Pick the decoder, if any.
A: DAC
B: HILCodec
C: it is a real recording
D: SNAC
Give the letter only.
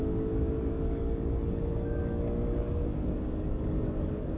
A